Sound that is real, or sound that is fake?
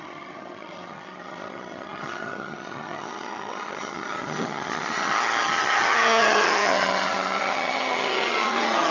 fake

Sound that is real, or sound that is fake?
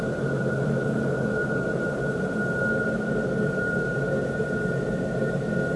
fake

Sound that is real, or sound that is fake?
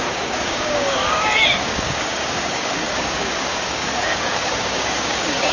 fake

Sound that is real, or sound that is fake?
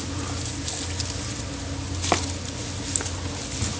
real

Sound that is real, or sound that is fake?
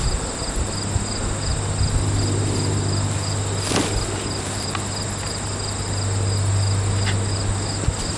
real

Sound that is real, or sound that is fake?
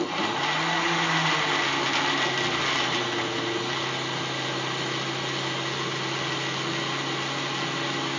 real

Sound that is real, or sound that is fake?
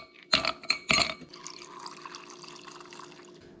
real